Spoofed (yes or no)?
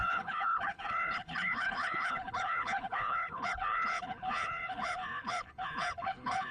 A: yes